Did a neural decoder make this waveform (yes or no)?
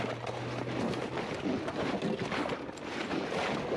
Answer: no